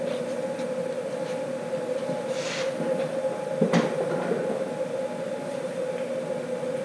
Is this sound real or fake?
real